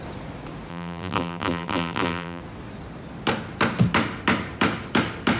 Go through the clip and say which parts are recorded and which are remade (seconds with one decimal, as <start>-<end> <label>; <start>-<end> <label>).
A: 0.0-0.7 recorded; 0.7-2.4 remade; 2.4-5.4 recorded